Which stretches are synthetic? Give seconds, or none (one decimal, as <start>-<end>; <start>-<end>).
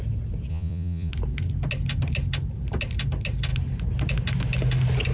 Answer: 0.5-1.1